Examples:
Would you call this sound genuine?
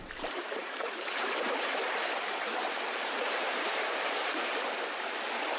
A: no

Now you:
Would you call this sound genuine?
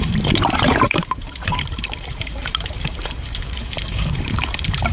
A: no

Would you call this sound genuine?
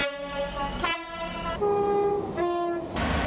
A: yes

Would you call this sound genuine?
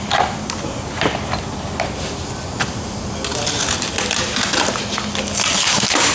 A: yes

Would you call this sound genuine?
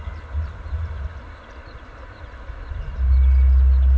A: yes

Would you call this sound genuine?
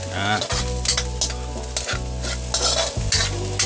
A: yes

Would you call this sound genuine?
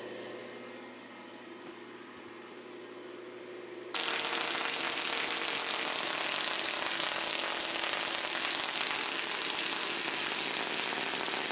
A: yes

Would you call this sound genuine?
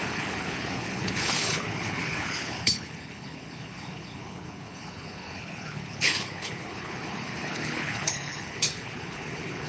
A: no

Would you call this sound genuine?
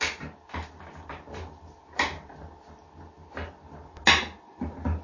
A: yes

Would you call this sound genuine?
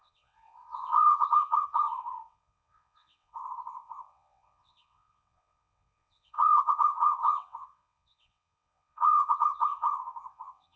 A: no